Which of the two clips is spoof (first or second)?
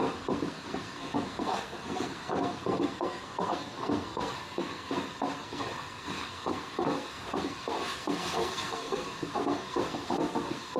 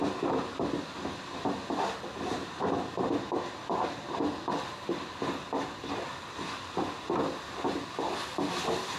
first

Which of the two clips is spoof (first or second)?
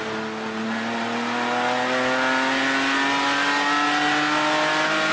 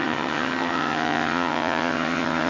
second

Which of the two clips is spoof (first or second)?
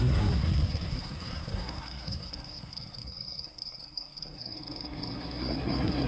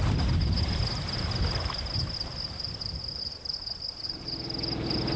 first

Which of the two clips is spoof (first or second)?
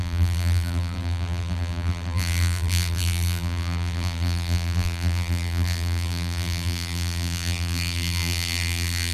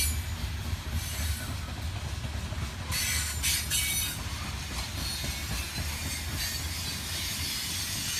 first